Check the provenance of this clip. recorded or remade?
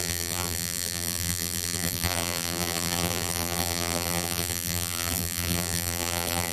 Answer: remade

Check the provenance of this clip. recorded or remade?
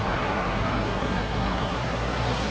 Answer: remade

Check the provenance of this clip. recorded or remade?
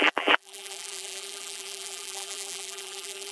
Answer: remade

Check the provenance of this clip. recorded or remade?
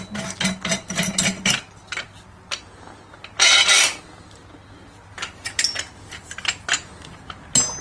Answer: recorded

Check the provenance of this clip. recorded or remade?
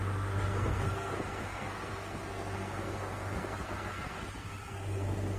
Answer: remade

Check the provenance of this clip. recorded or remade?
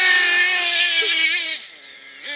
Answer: recorded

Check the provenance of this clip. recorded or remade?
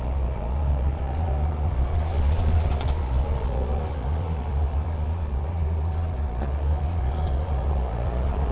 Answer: remade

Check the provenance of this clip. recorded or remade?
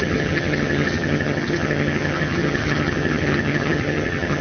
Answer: remade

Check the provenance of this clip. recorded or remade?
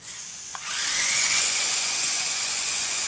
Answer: remade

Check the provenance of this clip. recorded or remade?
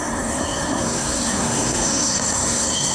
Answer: remade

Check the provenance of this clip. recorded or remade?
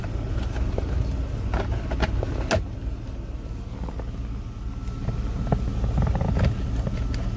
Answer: recorded